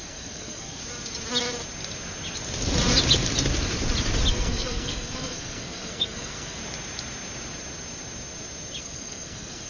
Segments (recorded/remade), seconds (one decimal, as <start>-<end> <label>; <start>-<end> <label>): 0.0-0.8 remade; 0.8-4.3 recorded; 4.3-6.6 remade; 6.6-8.8 recorded; 8.8-9.7 remade